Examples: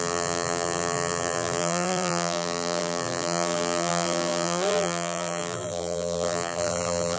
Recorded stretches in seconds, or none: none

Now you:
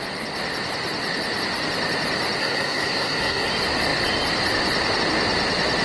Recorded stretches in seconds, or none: 0.0-2.4; 3.5-5.8